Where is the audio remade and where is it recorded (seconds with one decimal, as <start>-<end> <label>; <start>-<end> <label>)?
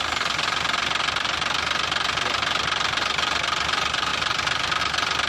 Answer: 0.0-5.3 recorded